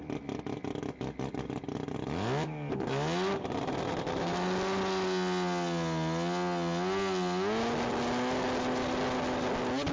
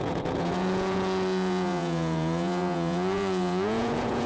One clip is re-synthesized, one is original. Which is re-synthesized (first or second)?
second